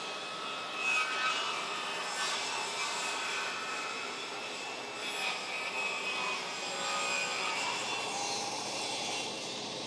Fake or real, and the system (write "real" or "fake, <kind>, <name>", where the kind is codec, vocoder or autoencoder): fake, vocoder, BigVGAN v2